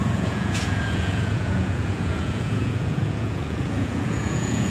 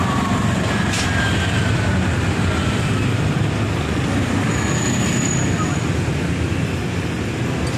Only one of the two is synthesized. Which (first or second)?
first